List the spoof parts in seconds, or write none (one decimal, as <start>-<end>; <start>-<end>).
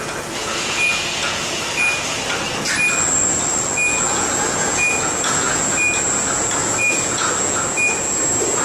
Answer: 0.4-1.6; 4.1-5.6; 6.6-7.3